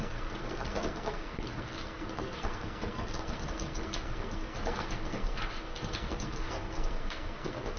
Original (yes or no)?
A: no